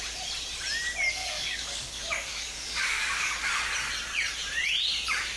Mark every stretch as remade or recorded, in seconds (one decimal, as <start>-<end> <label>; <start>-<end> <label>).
0.0-1.2 recorded; 1.2-3.5 remade; 3.5-5.4 recorded